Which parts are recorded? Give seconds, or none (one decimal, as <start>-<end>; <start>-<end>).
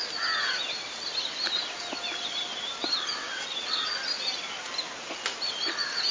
0.0-3.2; 3.9-6.1